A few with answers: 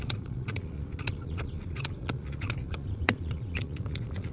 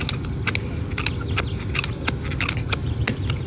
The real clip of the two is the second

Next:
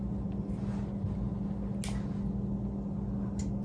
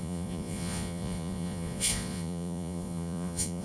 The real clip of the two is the first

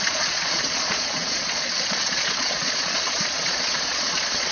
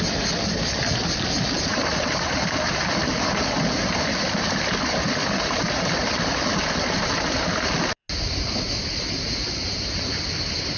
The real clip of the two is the second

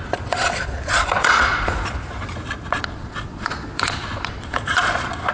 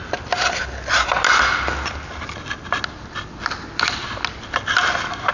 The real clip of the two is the second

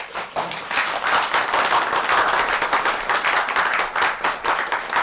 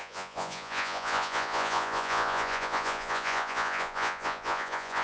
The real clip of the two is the first